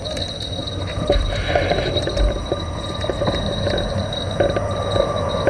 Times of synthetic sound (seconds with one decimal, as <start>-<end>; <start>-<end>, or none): 0.6-3.4